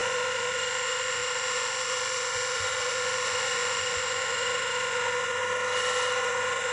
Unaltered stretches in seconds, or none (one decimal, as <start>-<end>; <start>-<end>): 5.4-6.2